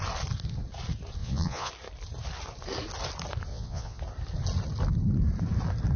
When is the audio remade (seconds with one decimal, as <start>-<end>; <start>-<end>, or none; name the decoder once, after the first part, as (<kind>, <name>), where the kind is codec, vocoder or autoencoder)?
1.2-1.7 (vocoder, Vocos); 3.5-4.0